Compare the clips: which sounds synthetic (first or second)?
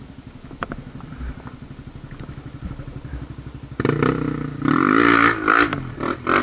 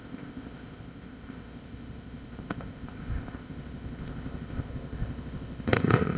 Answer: second